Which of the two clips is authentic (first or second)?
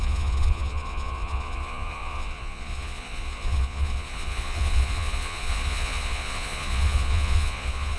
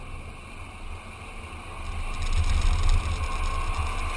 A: second